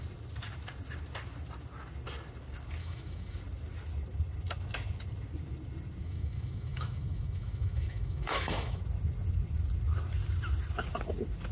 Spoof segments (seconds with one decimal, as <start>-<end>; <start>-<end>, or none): 2.8-3.4; 6.0-8.8